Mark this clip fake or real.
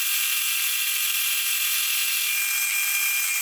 real